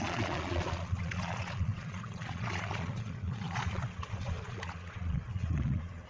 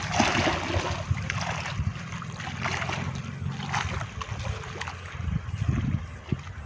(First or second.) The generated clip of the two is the first